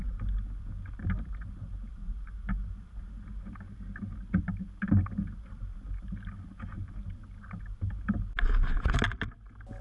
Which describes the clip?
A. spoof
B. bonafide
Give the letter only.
B